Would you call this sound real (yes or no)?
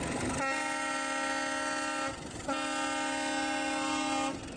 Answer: yes